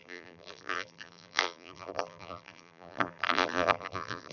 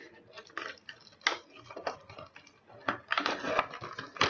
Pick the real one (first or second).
second